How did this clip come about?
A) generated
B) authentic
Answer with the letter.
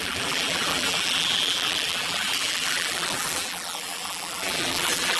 A